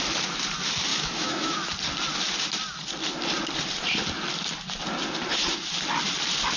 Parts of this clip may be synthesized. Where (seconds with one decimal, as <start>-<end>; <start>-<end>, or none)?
0.9-1.7